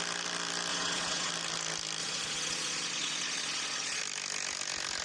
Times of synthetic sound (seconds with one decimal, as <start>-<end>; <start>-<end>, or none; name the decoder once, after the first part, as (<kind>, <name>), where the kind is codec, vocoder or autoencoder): 0.7-1.3 (vocoder, Vocos); 2.0-4.0